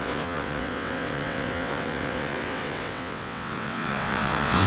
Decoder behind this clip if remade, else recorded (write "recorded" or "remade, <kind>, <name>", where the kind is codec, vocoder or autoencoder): remade, vocoder, WaveNeXt